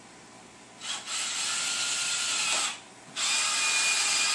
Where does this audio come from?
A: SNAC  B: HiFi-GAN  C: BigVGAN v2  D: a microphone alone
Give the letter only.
D